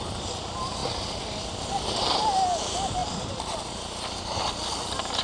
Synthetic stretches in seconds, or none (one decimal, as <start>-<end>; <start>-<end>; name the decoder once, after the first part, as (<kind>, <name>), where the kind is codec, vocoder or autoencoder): none